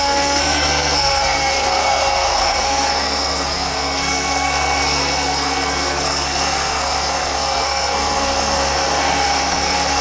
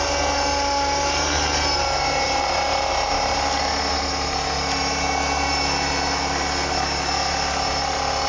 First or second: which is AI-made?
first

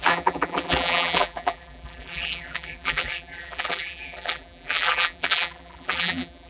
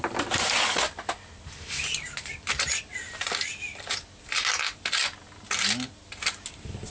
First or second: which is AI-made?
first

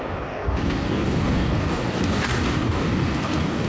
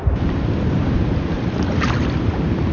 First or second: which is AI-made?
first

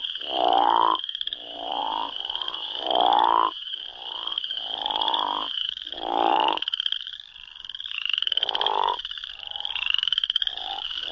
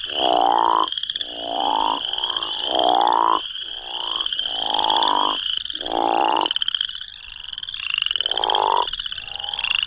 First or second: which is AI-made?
first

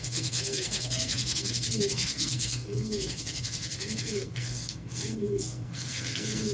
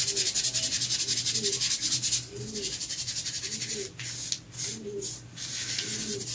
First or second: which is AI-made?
first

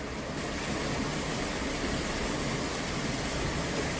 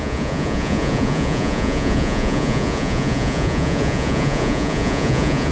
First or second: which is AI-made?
second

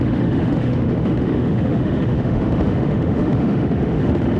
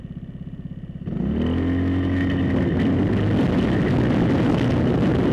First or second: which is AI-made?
first